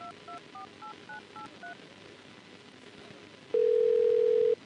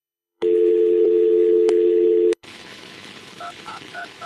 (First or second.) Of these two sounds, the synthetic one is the second